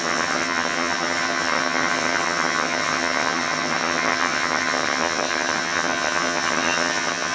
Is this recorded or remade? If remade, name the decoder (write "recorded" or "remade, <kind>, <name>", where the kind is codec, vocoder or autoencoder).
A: remade, vocoder, HiFi-GAN